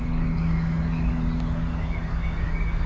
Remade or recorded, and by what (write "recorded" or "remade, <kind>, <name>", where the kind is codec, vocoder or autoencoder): remade, codec, DAC